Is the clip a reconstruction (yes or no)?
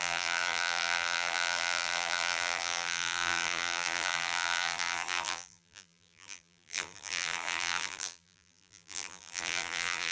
yes